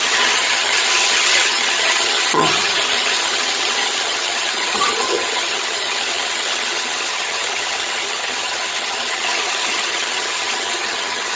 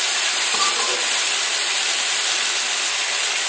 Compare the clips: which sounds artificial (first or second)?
first